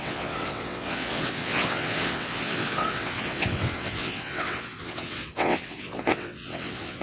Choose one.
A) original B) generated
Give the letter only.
B